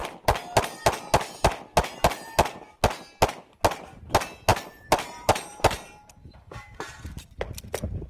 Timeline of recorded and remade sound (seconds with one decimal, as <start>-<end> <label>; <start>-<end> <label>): 0.0-4.5 recorded; 4.5-6.9 remade; 6.9-8.1 recorded